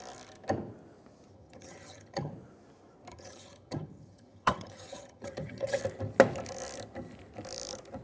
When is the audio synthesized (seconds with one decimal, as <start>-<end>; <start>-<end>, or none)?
1.3-2.3; 3.1-5.8